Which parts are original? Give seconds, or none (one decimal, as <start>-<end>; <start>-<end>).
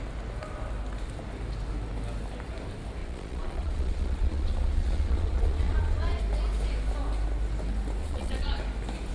0.0-3.0; 6.2-8.0; 8.6-9.1